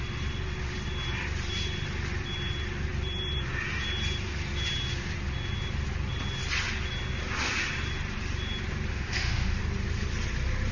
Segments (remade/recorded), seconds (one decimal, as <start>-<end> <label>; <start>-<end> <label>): 0.0-8.9 recorded; 8.9-9.6 remade; 9.6-10.7 recorded